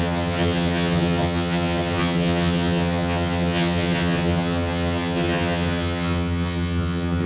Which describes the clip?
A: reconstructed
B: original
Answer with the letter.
A